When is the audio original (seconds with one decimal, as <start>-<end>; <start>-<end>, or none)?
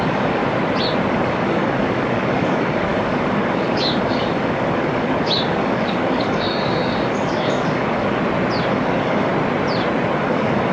0.4-1.1; 8.2-8.7; 9.3-10.2